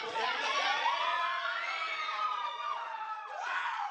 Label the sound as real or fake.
fake